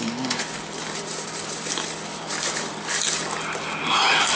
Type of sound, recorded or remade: recorded